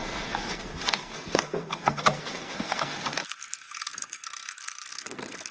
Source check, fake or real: fake